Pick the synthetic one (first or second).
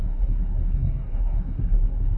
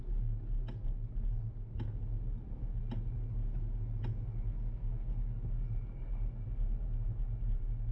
first